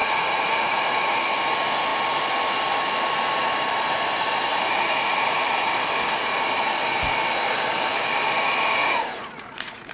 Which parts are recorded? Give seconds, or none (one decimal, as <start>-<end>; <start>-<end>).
1.2-4.5; 5.5-8.8